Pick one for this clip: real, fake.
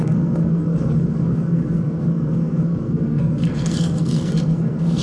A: fake